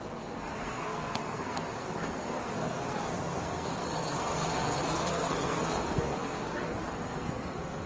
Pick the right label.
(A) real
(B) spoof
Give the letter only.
B